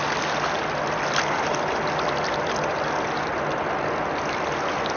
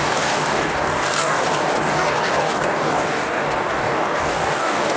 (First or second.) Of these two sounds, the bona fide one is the first